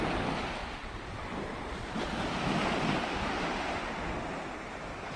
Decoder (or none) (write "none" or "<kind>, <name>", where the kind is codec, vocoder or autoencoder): none